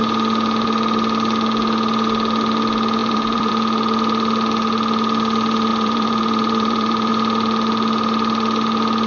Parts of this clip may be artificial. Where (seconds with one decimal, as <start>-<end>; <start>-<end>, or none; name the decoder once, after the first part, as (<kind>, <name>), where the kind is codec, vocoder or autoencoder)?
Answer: 3.0-3.5 (vocoder, BigVGAN v2); 5.7-7.1